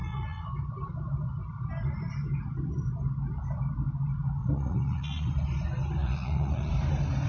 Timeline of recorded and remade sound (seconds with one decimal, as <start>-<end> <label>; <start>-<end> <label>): 0.0-0.5 remade; 0.5-4.4 recorded; 4.4-5.3 remade; 5.3-6.0 recorded; 6.0-6.7 remade; 6.7-7.3 recorded